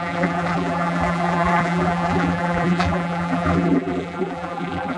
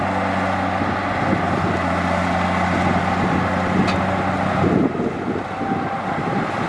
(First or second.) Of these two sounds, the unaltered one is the second